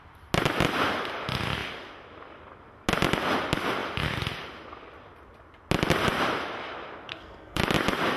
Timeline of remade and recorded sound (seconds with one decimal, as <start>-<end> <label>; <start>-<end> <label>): 0.0-7.1 recorded; 7.1-7.6 remade; 7.6-8.2 recorded